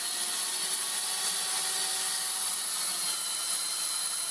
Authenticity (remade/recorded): recorded